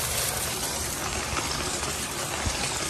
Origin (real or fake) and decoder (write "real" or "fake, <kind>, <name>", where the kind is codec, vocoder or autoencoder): real